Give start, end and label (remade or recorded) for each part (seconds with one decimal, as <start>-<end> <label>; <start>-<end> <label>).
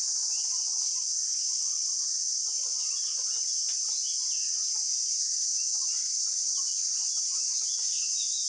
0.0-1.3 recorded; 1.3-2.9 remade; 2.9-8.5 recorded